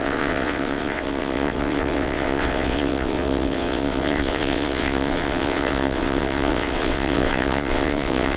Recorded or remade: remade